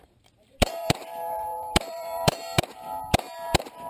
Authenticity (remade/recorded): remade